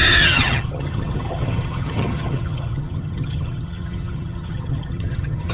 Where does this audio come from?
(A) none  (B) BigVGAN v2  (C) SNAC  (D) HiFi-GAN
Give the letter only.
D